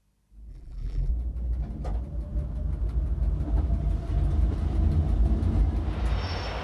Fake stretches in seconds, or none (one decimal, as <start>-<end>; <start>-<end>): 0.5-1.1